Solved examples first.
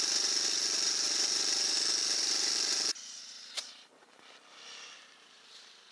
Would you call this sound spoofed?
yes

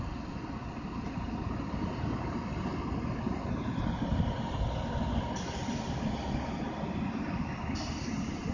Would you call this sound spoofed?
no